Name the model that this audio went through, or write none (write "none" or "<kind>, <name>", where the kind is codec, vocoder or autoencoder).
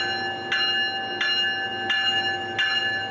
none